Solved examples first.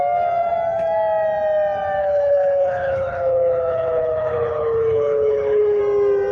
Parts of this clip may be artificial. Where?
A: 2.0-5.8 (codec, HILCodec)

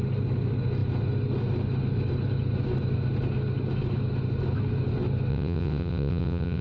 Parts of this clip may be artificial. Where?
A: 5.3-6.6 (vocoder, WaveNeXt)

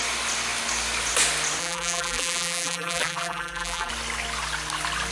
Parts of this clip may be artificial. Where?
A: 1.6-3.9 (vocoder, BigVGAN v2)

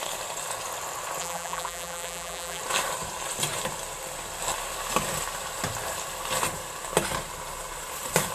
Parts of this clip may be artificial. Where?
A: 1.2-2.6 (vocoder, BigVGAN v2)

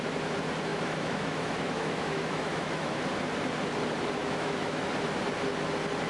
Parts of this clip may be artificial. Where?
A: 0.7-2.9 (autoencoder, DAC-VAE); 4.2-4.9